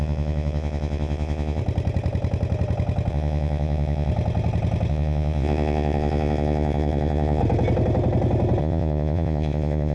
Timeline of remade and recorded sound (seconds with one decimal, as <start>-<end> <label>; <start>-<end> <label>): 0.0-1.6 remade; 1.6-3.1 recorded; 3.1-4.1 remade; 4.1-4.9 recorded; 4.9-7.4 remade; 7.4-8.6 recorded; 8.6-9.9 remade